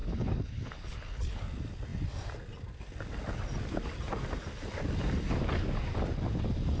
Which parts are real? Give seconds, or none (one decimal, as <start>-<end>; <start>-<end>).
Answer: 1.4-6.8